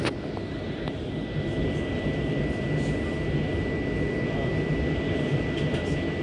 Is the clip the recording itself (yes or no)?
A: yes